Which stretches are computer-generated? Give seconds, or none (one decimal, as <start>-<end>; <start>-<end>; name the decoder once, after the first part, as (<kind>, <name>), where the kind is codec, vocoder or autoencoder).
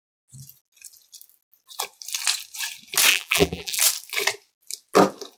3.1-3.8 (vocoder, BigVGAN v2)